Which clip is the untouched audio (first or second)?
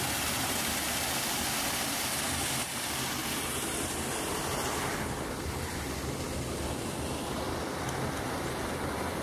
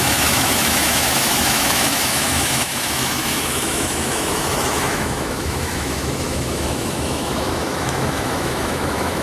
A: first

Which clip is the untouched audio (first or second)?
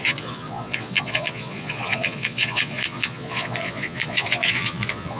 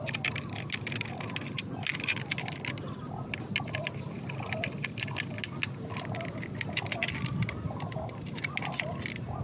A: second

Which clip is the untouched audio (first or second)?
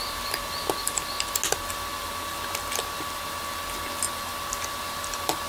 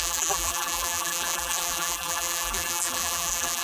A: first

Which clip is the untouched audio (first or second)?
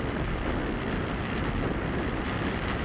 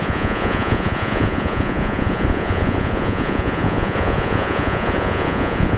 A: first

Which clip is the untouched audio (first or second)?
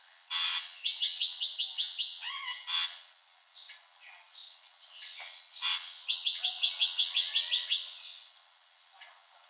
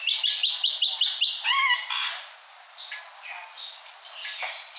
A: second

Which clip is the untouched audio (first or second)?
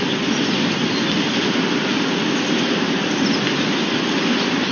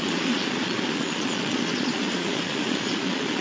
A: first